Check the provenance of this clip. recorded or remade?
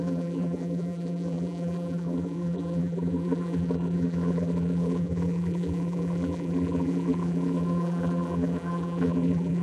remade